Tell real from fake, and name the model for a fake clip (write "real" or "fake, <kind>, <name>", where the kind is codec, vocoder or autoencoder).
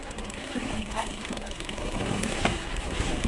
fake, codec, SNAC